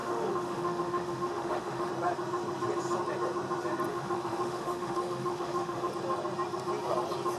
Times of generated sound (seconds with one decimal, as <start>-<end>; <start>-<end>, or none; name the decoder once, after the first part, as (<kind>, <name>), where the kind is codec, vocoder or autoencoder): 0.0-1.9 (autoencoder, DAC-VAE); 3.9-5.9